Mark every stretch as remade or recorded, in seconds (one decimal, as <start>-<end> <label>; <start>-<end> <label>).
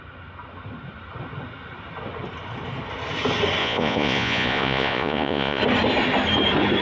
0.0-3.6 recorded; 3.6-5.6 remade; 5.6-6.8 recorded